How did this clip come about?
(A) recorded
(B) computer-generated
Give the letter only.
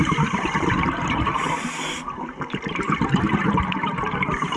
B